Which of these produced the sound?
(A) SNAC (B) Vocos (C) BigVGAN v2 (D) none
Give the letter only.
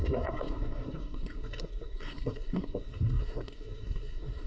A